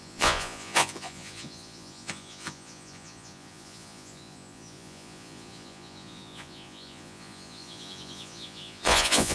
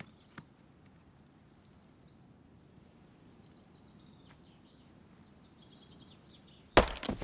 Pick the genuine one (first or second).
second